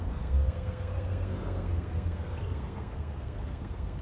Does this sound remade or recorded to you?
remade